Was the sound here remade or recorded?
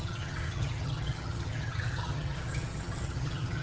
remade